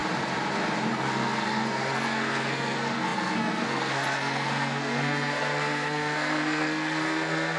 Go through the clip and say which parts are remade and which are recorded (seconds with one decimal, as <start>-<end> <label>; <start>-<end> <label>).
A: 0.0-0.9 recorded; 0.9-7.6 remade